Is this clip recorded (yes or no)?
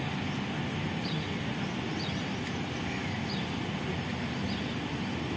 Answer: yes